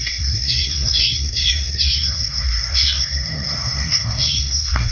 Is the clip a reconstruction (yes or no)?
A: yes